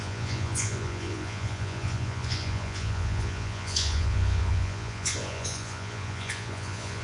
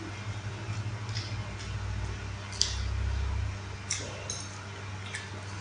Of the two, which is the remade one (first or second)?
first